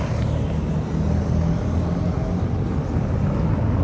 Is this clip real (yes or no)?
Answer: yes